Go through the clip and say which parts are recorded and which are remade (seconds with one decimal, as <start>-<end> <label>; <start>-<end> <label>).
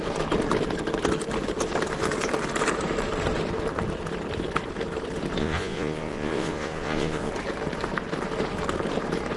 0.0-5.4 recorded; 5.4-7.3 remade; 7.3-9.4 recorded